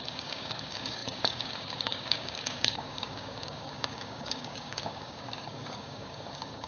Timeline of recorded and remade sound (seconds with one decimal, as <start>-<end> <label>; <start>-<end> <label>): 0.0-6.7 remade